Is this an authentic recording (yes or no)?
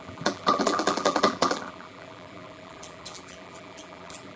no